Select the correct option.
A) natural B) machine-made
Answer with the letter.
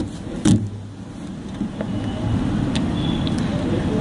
A